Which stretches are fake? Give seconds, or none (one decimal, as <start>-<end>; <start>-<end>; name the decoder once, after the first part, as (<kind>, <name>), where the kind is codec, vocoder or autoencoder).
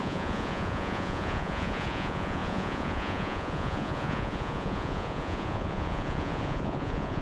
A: 0.0-7.2 (vocoder, Vocos)